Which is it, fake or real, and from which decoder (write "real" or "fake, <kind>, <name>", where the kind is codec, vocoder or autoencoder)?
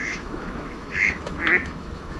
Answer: fake, autoencoder, DAC-VAE